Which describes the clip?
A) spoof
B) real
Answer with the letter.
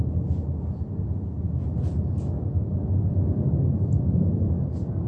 B